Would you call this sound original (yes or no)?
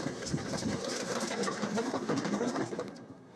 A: no